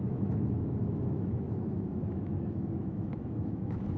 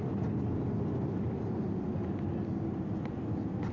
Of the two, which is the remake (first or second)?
first